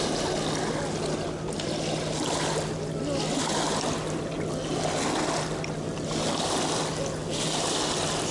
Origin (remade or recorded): recorded